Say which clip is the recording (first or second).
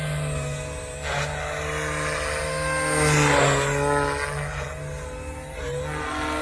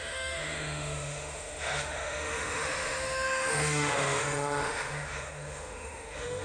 first